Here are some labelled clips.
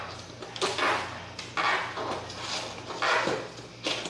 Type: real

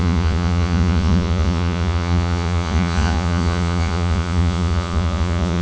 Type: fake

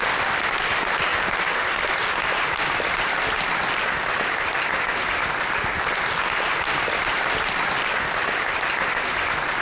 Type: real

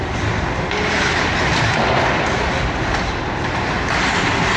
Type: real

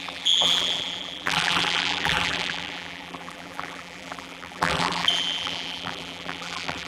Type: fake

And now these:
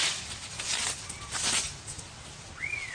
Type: real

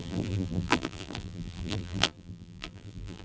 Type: fake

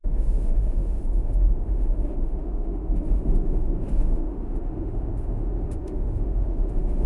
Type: fake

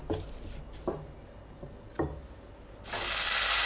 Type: real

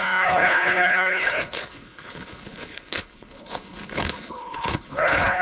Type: fake